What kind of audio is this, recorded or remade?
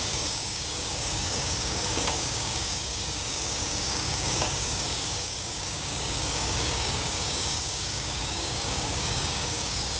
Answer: remade